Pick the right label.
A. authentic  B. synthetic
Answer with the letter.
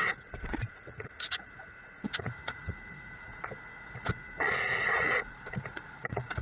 B